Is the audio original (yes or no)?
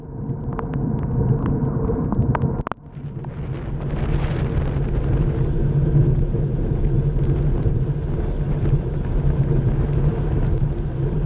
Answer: yes